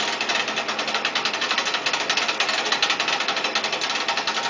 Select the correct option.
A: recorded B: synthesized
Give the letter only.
A